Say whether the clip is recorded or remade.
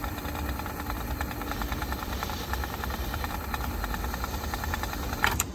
remade